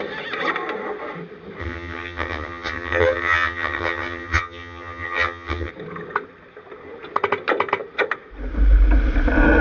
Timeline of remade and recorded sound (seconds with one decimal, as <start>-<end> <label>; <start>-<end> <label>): 0.0-1.6 recorded; 1.6-5.7 remade; 5.7-9.6 recorded